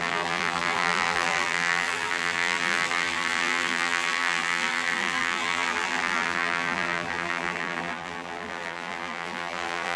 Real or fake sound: fake